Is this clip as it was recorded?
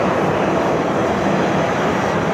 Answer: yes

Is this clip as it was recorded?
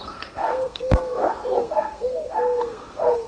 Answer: no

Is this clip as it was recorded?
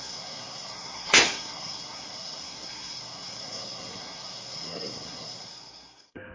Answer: no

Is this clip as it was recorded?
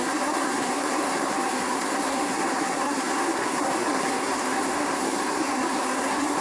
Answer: no